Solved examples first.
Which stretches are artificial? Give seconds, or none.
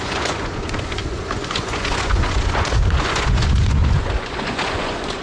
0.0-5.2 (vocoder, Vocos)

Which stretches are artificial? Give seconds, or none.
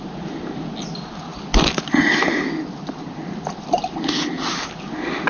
none